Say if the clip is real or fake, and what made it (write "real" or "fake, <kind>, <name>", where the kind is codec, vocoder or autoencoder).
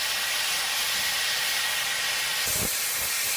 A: real